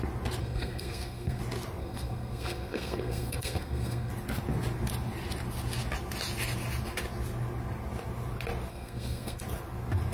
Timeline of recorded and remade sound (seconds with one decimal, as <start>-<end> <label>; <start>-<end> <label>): 0.0-0.4 recorded; 0.4-1.4 remade; 1.4-1.8 recorded; 1.8-4.1 remade; 4.1-8.7 recorded; 8.7-9.4 remade; 9.4-10.1 recorded